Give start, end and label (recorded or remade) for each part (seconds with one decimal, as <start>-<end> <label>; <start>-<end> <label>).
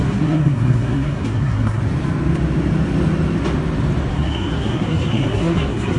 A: 0.0-1.8 remade; 1.8-4.1 recorded; 4.1-6.0 remade